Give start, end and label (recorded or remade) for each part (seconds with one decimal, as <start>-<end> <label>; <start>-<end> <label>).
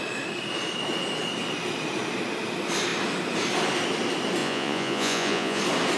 0.0-4.4 recorded; 4.4-5.6 remade; 5.6-6.0 recorded